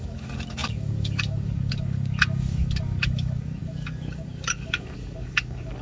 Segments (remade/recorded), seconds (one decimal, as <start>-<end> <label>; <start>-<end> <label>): 0.0-5.8 remade